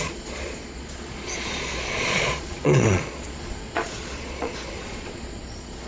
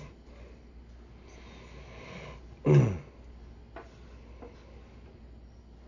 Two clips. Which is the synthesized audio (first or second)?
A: first